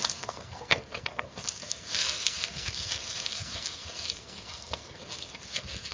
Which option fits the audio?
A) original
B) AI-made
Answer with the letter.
B